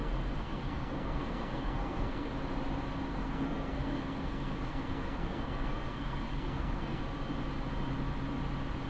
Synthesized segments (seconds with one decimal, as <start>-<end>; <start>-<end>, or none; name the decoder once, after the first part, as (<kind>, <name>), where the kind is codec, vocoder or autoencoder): 0.0-2.3 (codec, SNAC); 3.1-7.0